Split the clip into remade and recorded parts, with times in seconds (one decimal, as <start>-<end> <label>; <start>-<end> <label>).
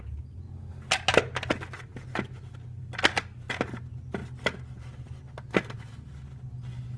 0.0-7.0 recorded